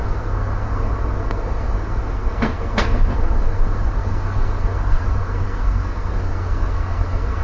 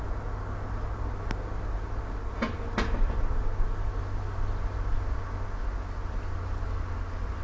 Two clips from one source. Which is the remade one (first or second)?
first